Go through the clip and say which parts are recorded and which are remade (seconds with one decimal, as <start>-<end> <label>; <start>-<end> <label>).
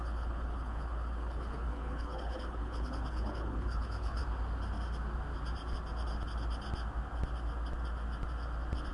0.0-4.2 remade; 4.2-8.9 recorded